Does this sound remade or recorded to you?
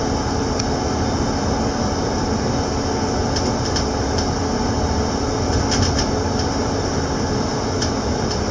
recorded